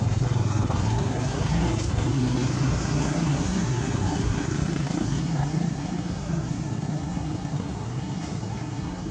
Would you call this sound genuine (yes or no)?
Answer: no